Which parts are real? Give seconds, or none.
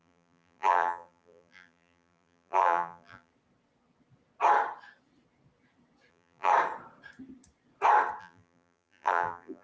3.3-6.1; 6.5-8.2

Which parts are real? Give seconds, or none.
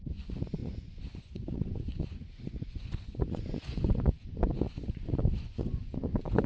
none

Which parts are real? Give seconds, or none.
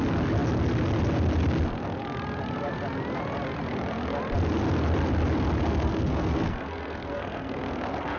0.0-5.6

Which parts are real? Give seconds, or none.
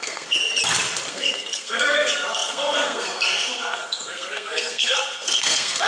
0.4-1.1